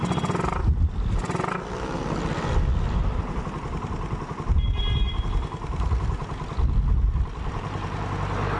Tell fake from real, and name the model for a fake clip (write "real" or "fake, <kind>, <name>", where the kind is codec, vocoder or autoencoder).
real